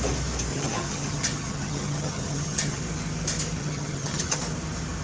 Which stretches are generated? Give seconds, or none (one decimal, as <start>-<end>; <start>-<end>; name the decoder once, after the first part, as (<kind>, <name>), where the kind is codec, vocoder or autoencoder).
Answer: 0.5-2.8 (vocoder, HiFi-GAN); 3.6-4.4